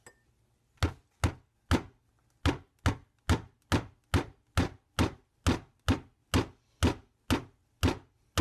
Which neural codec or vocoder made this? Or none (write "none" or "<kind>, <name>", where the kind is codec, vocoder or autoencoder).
none